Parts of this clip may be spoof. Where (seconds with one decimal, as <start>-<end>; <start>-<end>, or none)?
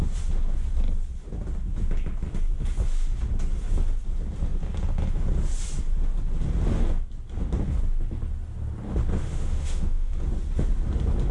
9.2-10.1